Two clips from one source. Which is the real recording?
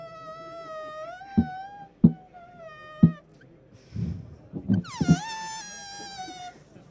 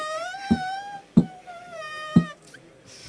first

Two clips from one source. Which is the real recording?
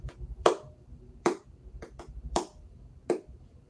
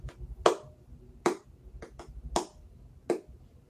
second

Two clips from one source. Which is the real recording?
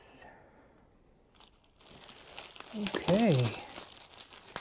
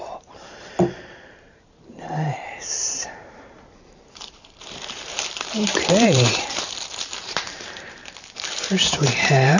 first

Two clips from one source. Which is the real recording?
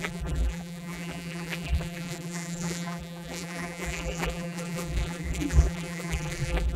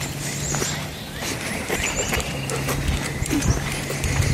second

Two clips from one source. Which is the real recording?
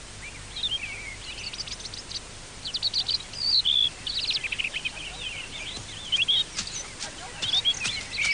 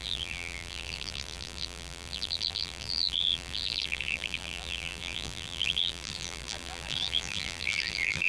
first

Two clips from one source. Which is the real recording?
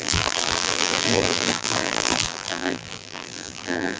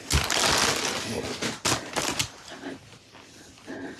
second